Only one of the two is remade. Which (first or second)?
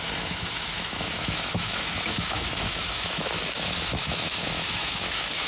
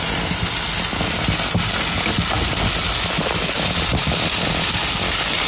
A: first